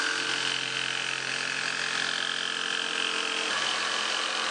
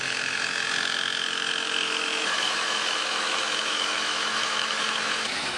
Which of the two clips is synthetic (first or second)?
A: second